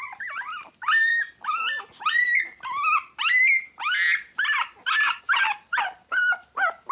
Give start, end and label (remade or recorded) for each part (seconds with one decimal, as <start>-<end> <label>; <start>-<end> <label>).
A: 0.0-1.1 remade; 1.1-5.2 recorded; 5.2-6.9 remade